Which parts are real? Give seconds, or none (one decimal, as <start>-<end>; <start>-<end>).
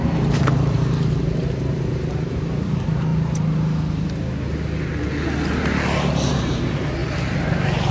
3.1-6.1; 7.0-7.9